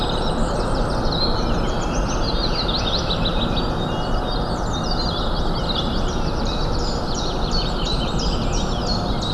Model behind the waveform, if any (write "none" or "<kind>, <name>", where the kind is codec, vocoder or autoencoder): none